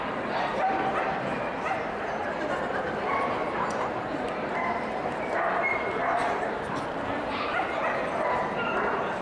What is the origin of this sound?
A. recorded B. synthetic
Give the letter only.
B